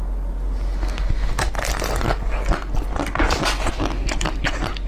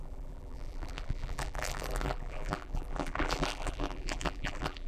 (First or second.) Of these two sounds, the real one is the first